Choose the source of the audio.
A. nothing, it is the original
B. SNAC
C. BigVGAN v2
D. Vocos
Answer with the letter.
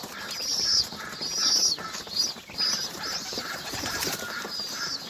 C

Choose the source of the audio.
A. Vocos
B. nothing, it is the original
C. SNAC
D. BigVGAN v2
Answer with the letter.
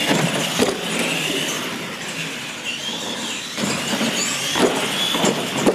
B